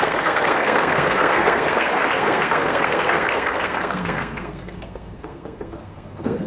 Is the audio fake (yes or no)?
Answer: yes